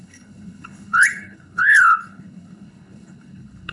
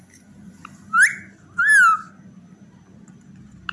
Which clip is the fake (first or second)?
first